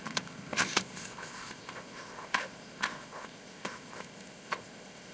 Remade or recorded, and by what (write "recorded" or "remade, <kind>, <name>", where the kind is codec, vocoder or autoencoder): remade, codec, ZipCodec